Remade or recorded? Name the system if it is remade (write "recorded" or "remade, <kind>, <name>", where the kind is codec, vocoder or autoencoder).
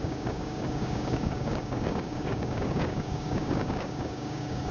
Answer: remade, codec, DAC